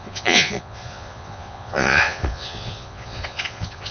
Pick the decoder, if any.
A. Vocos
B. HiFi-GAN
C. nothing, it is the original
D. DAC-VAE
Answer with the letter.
A